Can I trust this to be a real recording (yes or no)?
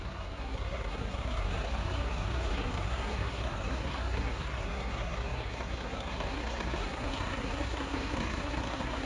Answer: no